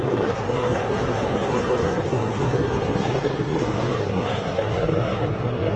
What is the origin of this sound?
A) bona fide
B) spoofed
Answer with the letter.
B